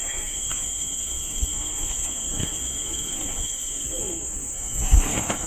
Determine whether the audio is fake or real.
fake